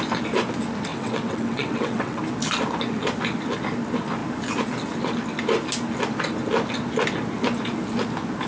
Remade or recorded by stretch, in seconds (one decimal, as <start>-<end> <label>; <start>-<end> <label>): 0.0-0.9 recorded; 0.9-2.2 remade; 2.2-8.5 recorded